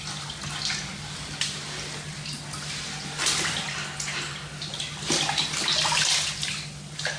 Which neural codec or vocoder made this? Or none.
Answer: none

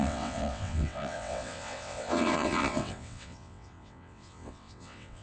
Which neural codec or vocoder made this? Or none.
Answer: vocoder, WaveNeXt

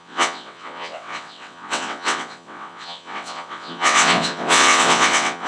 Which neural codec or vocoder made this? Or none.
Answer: vocoder, WaveNeXt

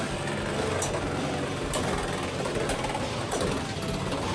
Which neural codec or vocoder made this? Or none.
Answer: none